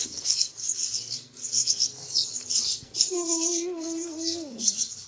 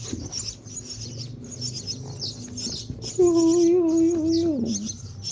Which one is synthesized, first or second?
first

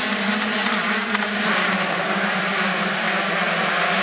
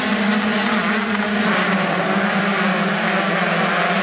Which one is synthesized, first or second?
first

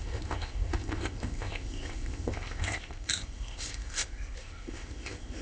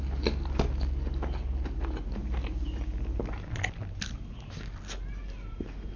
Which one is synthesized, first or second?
first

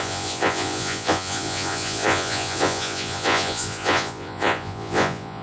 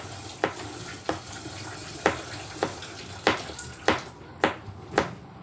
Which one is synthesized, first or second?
first